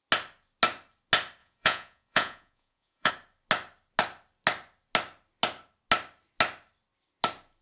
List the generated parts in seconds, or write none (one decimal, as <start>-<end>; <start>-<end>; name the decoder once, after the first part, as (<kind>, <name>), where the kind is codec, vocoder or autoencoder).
1.4-3.1 (vocoder, Vocos)